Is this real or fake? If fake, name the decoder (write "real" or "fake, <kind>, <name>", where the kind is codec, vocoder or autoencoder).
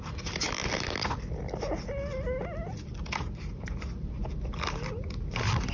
real